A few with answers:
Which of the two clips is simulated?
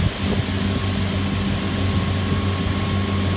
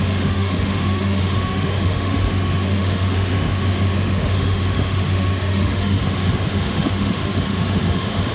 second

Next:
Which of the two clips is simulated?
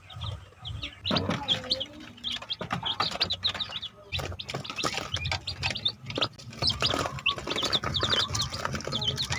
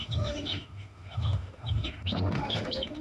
second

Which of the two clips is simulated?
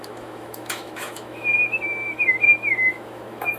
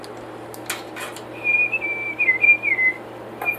first